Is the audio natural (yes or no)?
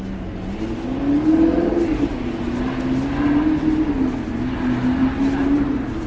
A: yes